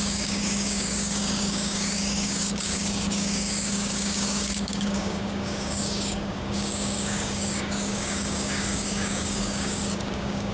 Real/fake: fake